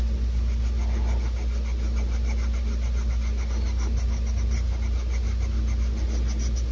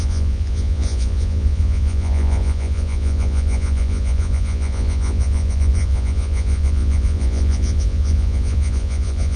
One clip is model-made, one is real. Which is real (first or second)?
first